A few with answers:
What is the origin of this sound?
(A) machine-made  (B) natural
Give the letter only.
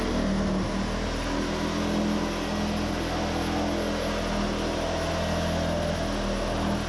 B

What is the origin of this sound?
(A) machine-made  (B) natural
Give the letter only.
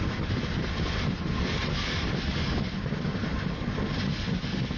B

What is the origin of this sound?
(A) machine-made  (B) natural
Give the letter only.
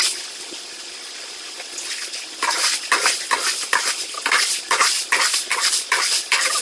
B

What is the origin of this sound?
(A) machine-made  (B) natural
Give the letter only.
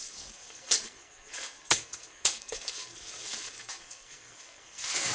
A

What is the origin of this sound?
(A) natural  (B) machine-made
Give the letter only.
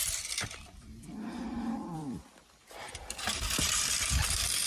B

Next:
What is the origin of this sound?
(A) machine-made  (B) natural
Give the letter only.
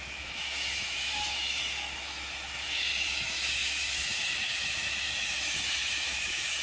A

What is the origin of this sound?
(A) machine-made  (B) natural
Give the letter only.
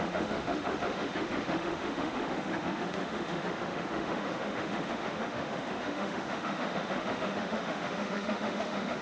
A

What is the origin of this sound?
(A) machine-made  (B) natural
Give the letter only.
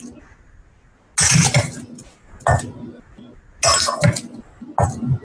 B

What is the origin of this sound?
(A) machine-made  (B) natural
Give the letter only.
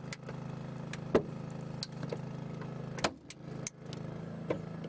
B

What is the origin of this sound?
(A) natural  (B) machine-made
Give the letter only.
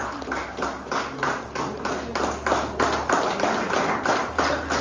A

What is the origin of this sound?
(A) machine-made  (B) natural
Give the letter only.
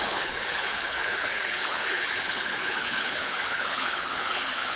A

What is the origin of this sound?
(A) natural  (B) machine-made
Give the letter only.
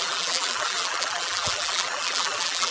B